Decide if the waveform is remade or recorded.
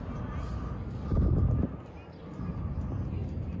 recorded